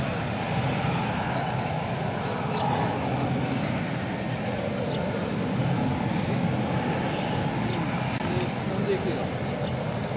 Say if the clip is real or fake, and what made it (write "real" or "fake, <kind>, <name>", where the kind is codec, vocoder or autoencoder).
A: real